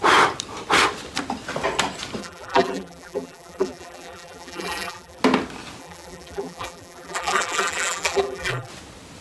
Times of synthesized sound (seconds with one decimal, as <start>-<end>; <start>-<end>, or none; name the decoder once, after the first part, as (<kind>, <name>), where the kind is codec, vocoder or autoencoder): 2.2-5.2 (vocoder, BigVGAN v2); 5.8-8.7